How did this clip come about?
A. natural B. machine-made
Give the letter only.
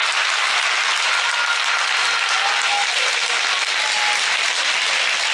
A